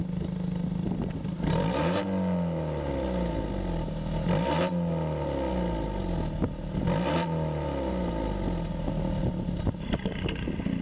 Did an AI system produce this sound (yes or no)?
no